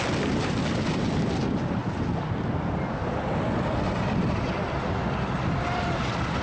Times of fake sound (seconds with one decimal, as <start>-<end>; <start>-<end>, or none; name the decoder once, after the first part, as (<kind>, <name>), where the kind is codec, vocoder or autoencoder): 1.8-2.7 (vocoder, BigVGAN v2)